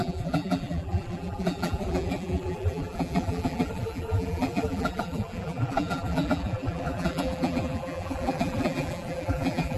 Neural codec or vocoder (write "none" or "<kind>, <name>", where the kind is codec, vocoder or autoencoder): vocoder, BigVGAN v2